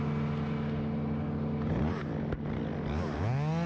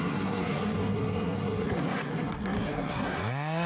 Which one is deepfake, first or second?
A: second